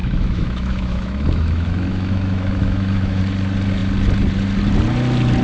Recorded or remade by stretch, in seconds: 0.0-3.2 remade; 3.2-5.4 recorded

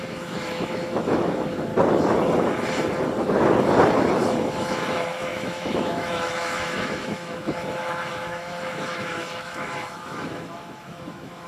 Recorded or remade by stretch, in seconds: 0.0-1.7 remade; 1.7-4.4 recorded; 4.4-11.5 remade

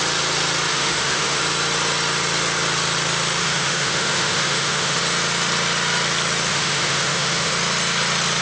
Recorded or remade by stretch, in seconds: 0.0-0.7 recorded; 0.7-1.4 remade; 1.4-3.4 recorded; 3.4-5.0 remade; 5.0-6.5 recorded; 6.5-7.5 remade; 7.5-8.4 recorded

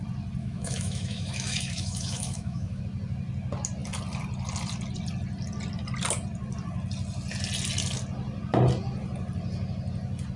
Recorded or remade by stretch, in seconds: 0.0-0.4 recorded; 0.4-2.8 remade; 2.8-10.4 recorded

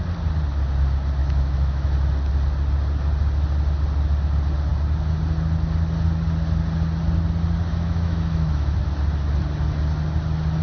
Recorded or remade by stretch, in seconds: 0.0-1.2 recorded; 1.2-1.9 remade; 1.9-7.7 recorded; 7.7-8.8 remade; 8.8-10.6 recorded

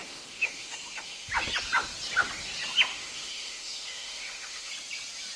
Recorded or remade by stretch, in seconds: 0.0-1.3 remade; 1.3-2.9 recorded; 2.9-4.7 remade; 4.7-5.4 recorded

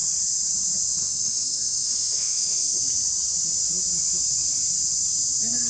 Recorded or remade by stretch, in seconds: 0.0-1.0 recorded; 1.0-2.8 remade; 2.8-5.7 recorded

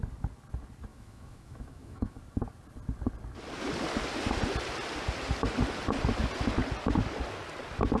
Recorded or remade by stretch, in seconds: 0.0-0.9 recorded; 0.9-2.2 remade; 2.2-8.0 recorded